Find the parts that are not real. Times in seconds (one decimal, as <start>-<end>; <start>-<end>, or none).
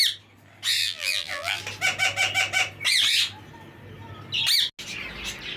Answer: 0.8-1.6